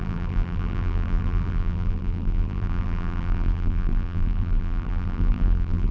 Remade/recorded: remade